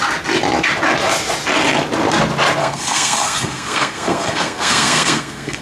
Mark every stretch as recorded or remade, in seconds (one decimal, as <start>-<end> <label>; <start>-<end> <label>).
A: 0.0-2.6 recorded; 2.6-5.6 remade

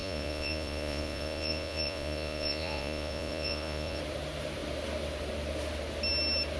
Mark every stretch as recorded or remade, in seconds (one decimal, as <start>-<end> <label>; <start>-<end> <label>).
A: 0.0-4.0 remade; 4.0-6.6 recorded

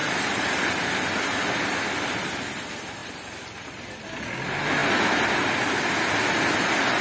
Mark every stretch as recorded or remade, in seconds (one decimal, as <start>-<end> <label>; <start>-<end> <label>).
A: 0.0-0.7 remade; 0.7-3.0 recorded; 3.0-3.9 remade; 3.9-4.8 recorded; 4.8-5.3 remade; 5.3-7.0 recorded